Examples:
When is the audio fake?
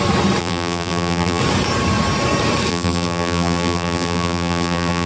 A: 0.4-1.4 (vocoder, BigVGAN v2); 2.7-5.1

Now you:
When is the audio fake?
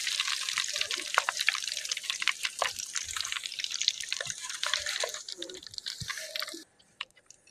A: 0.0-6.1 (vocoder, BigVGAN v2); 6.6-7.5